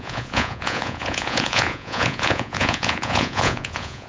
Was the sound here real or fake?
fake